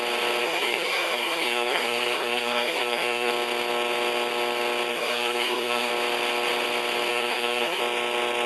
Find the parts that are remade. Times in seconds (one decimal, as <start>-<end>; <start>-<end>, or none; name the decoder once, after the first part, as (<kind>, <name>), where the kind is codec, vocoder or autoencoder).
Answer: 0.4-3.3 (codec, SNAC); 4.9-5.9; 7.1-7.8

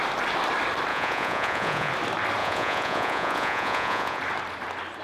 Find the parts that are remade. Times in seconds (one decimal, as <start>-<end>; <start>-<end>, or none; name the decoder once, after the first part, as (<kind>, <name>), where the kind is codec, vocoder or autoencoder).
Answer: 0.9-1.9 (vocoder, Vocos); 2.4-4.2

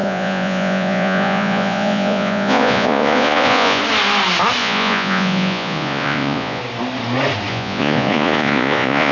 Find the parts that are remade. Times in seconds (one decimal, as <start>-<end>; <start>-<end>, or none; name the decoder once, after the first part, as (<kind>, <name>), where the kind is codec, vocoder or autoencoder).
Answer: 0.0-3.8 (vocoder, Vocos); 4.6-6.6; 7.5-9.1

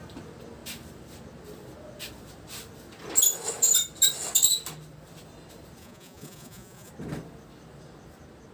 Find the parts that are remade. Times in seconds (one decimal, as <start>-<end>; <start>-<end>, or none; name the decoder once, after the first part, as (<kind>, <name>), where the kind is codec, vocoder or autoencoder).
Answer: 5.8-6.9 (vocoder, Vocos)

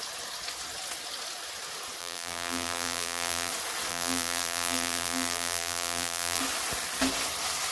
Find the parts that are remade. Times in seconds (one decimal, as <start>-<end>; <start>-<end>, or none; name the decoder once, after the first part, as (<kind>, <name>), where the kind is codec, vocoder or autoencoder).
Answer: 2.0-3.5 (vocoder, BigVGAN v2); 3.9-6.4

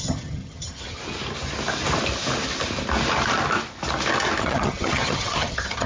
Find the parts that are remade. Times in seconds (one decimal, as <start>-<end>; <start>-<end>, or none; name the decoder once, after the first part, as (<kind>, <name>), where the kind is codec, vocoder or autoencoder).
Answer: 0.0-1.0 (vocoder, HiFi-GAN); 4.4-5.9